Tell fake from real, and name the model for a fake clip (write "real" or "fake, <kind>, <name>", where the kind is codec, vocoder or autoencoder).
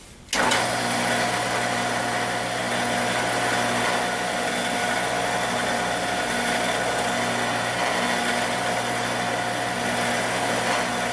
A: real